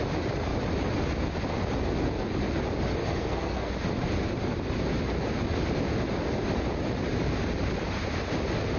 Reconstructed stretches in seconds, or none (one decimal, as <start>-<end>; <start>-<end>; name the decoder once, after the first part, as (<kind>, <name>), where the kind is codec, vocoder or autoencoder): 3.0-3.7 (codec, SNAC)